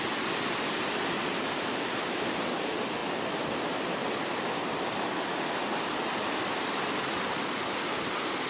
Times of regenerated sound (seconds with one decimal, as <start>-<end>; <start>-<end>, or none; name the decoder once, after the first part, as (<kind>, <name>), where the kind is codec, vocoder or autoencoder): none